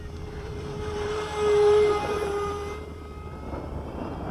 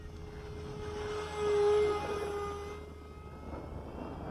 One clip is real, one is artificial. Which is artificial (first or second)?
first